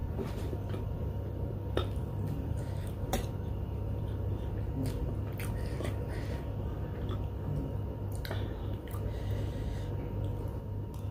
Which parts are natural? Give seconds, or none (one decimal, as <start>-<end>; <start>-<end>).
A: 4.5-11.1